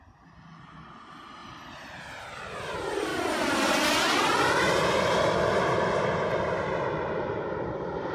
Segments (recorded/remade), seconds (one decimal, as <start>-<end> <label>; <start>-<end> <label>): 0.0-1.4 recorded; 1.4-2.0 remade; 2.0-8.1 recorded